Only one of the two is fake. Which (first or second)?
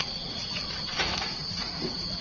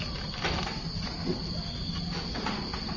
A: first